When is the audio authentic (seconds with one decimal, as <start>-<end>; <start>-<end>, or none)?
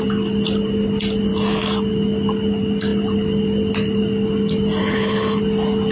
0.0-4.8; 5.4-5.9